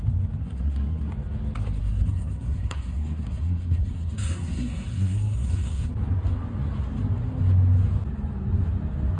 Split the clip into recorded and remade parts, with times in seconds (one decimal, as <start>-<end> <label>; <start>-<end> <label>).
0.0-0.4 recorded; 0.4-1.1 remade; 1.1-1.8 recorded; 1.8-5.9 remade; 5.9-9.2 recorded

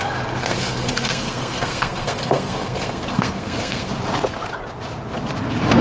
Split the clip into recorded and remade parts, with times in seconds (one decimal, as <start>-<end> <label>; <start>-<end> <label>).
0.0-0.4 recorded; 0.4-3.9 remade; 3.9-5.8 recorded

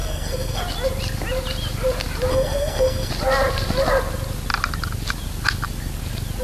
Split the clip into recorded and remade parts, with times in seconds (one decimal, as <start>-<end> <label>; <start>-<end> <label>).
0.0-0.6 remade; 0.6-2.3 recorded; 2.3-3.1 remade; 3.1-6.4 recorded

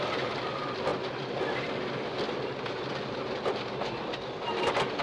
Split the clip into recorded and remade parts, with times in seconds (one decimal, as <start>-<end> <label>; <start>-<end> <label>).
0.0-5.0 recorded

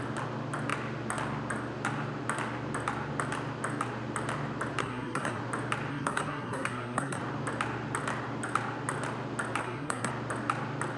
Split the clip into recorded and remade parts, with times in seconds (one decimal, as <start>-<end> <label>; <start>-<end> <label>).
0.0-4.8 recorded; 4.8-5.4 remade; 5.4-5.9 recorded; 5.9-7.2 remade; 7.2-9.6 recorded; 9.6-10.1 remade; 10.1-11.0 recorded

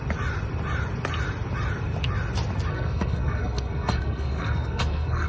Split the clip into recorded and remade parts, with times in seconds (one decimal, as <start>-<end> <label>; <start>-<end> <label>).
0.0-2.7 recorded; 2.7-5.3 remade

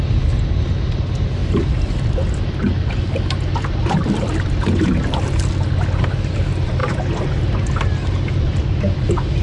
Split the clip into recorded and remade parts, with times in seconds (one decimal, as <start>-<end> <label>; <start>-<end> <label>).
0.0-9.4 recorded

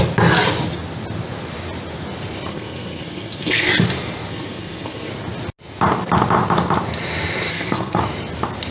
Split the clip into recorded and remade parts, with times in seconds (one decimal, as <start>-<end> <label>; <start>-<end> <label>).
0.0-2.5 recorded; 2.5-3.7 remade; 3.7-4.3 recorded; 4.3-5.1 remade; 5.1-7.5 recorded; 7.5-8.0 remade; 8.0-8.7 recorded